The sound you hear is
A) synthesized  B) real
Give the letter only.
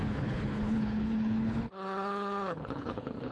A